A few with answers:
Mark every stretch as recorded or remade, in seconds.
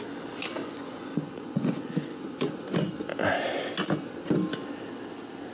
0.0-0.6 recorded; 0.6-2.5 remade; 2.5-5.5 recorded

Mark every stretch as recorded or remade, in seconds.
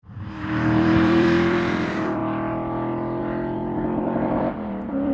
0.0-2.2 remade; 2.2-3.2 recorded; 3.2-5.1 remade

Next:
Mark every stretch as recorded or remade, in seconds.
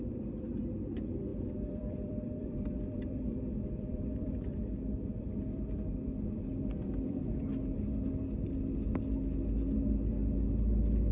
0.0-7.5 remade; 7.5-11.1 recorded